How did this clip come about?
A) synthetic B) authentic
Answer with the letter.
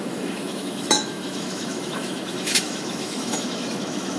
A